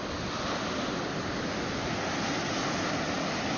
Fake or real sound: real